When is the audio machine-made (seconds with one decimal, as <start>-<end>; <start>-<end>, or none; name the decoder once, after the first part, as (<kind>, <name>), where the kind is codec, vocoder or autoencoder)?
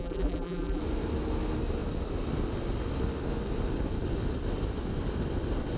0.0-0.8 (vocoder, BigVGAN v2)